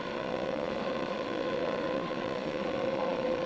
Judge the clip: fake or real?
fake